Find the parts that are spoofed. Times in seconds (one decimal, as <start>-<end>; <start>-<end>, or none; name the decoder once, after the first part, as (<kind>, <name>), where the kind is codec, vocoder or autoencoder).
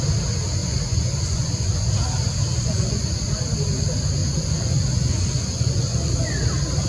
0.6-1.9 (vocoder, Vocos); 2.5-3.1; 4.2-6.1